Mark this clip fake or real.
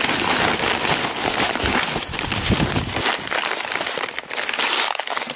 real